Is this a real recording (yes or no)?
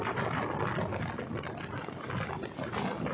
yes